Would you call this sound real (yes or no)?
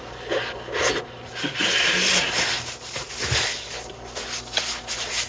yes